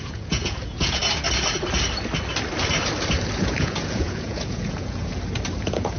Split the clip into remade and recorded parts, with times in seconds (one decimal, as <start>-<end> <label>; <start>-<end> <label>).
0.0-1.0 remade; 1.0-3.4 recorded; 3.4-5.1 remade; 5.1-5.6 recorded; 5.6-6.0 remade